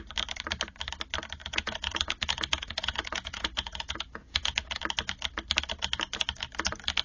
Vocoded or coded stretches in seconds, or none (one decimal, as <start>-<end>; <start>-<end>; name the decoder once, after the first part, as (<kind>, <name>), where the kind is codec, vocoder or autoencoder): 1.4-4.8 (vocoder, Vocos)